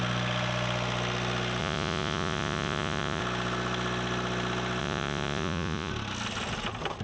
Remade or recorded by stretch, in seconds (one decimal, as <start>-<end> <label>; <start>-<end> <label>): 0.0-1.6 recorded; 1.6-3.2 remade; 3.2-4.8 recorded; 4.8-5.9 remade; 5.9-7.0 recorded